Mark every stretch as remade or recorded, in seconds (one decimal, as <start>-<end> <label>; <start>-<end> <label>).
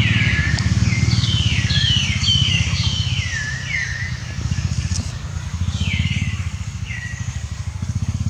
0.0-0.4 recorded; 0.4-3.1 remade; 3.1-4.2 recorded; 4.2-8.3 remade